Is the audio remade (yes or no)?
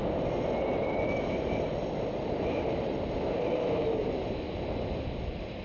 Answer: no